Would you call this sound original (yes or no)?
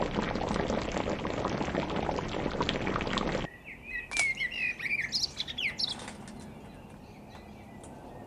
yes